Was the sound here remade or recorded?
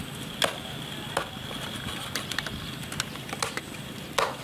recorded